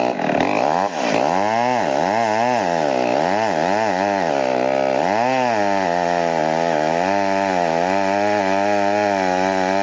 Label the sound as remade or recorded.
recorded